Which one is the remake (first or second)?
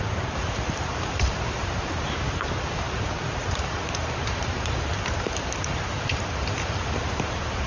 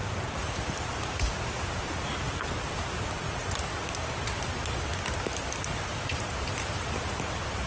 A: first